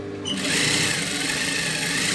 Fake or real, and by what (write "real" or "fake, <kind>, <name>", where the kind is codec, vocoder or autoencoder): real